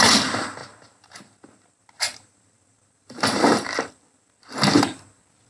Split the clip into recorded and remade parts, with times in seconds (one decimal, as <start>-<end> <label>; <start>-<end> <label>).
0.0-0.6 recorded; 0.6-3.9 remade; 3.9-5.5 recorded